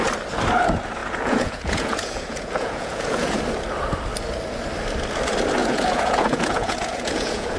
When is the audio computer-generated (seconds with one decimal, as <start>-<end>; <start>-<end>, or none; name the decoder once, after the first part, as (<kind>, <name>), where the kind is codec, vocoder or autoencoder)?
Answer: 1.0-3.4 (vocoder, Vocos); 5.6-7.6